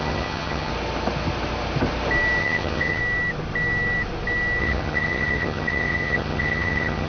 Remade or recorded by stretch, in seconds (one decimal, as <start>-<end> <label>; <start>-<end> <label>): 0.0-0.7 remade; 0.7-2.4 recorded; 2.4-3.0 remade; 3.0-4.6 recorded; 4.6-7.1 remade